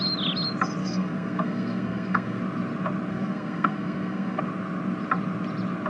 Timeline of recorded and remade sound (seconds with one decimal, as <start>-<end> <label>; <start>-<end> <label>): 0.0-0.8 recorded; 0.8-2.4 remade; 2.4-3.1 recorded; 3.1-4.4 remade; 4.4-5.9 recorded